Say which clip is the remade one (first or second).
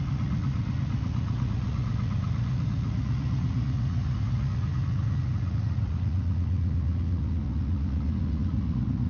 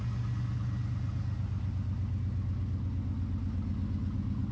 first